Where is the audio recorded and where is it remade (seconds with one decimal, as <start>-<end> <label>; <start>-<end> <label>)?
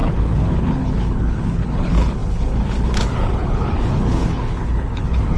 0.0-5.4 remade